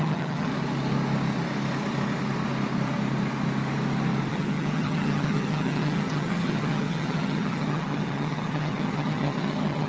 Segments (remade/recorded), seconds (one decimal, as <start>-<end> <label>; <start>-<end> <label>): 0.0-0.5 remade; 0.5-4.3 recorded; 4.3-9.9 remade